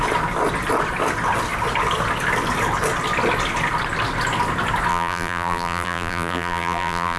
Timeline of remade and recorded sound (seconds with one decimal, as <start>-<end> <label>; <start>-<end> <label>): 0.0-4.9 recorded; 4.9-7.2 remade